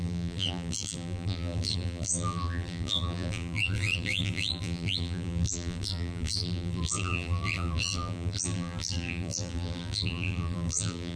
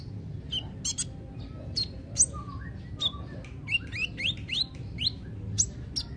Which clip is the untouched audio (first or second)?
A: second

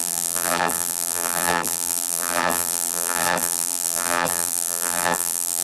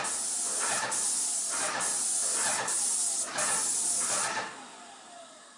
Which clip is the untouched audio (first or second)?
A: second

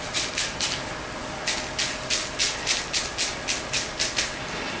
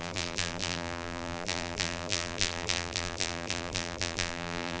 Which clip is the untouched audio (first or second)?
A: first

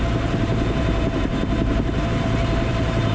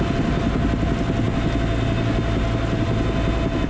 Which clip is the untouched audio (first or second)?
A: second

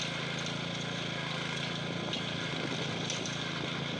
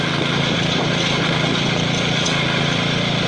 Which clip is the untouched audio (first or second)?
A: first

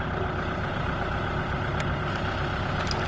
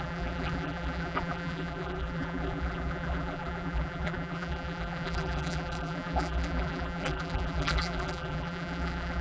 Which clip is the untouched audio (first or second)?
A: first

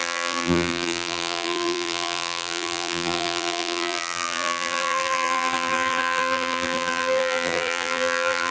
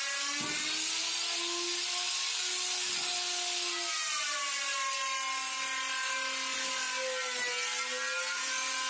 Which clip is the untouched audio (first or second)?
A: second